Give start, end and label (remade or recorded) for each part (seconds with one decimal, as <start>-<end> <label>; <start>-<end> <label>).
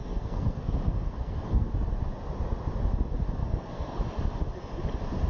0.0-1.7 remade; 1.7-3.4 recorded; 3.4-4.0 remade; 4.0-5.3 recorded